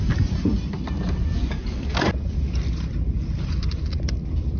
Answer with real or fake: fake